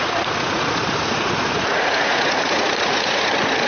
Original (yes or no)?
no